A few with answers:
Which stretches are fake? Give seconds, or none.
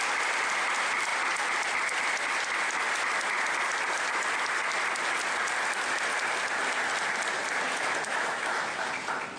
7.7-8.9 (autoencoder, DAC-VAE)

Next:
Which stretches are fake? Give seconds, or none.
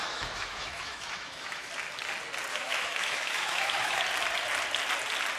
0.0-1.7 (autoencoder, DAC-VAE); 2.5-4.0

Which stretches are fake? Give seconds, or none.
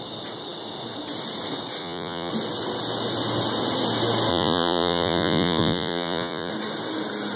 1.8-2.3 (vocoder, Vocos); 4.3-6.5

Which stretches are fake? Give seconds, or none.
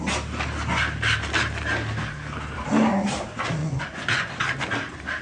3.6-4.4 (vocoder, Vocos)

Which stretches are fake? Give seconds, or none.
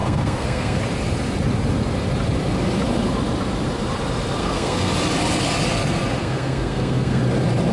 0.0-0.8 (codec, SNAC); 4.4-4.9; 6.2-7.2